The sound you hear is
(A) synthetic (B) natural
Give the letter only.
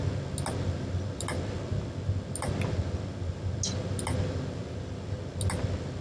B